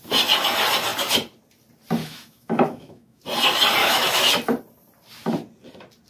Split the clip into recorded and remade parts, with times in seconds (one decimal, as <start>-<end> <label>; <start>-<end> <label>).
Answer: 0.0-2.0 recorded; 2.0-3.2 remade; 3.2-3.8 recorded; 3.8-4.3 remade; 4.3-6.1 recorded